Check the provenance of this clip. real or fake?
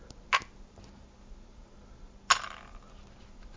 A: real